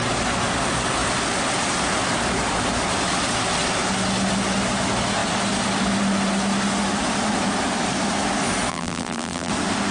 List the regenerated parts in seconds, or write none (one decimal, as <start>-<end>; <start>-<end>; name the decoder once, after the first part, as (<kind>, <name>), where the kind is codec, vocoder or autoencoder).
8.7-9.5 (vocoder, BigVGAN v2)